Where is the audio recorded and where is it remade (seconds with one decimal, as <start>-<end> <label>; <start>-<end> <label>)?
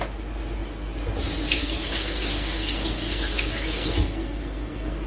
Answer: 0.0-1.6 recorded; 1.6-5.1 remade